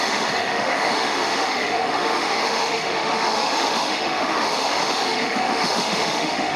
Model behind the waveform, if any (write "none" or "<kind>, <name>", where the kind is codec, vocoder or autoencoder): autoencoder, DAC-VAE